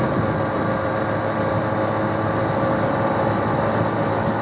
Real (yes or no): yes